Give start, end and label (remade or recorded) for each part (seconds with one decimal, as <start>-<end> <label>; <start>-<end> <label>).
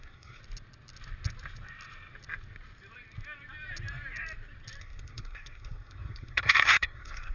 0.0-0.4 remade; 0.4-4.8 recorded; 4.8-7.3 remade